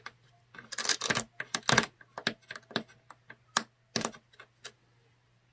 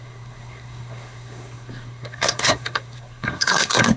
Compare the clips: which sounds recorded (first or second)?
first